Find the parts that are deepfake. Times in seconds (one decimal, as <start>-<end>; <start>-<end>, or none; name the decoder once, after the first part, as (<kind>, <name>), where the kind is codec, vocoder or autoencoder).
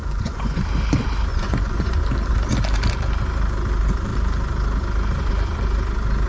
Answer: 0.0-0.6 (vocoder, Vocos); 1.3-2.0